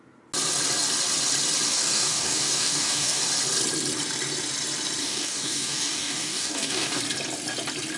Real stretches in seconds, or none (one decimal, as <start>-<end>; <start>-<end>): 0.0-1.7; 3.2-5.0; 7.0-8.0